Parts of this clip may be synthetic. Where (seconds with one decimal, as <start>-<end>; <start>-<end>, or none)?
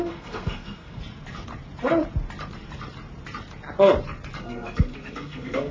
0.0-1.0; 4.4-5.7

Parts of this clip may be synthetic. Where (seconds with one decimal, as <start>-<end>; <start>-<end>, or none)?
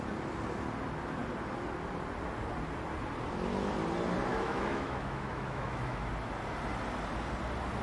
4.3-6.1